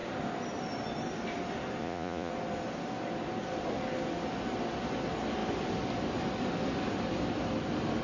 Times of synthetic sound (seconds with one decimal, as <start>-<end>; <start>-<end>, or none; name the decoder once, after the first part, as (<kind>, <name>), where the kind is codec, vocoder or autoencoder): 1.8-2.3 (vocoder, Vocos)